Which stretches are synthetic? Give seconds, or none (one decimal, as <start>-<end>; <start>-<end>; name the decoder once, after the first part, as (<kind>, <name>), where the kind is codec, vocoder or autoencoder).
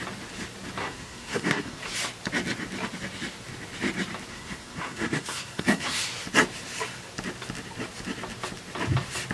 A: 0.8-1.8 (codec, SNAC); 4.3-6.0